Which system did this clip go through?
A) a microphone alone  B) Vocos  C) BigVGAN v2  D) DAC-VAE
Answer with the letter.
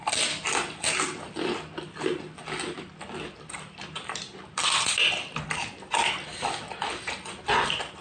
A